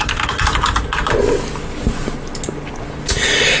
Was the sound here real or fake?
real